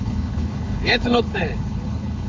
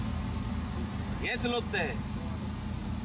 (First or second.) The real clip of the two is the second